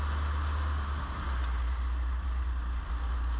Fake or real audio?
real